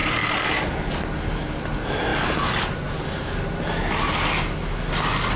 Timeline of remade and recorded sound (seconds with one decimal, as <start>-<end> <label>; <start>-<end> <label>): 0.0-0.5 remade; 0.5-5.4 recorded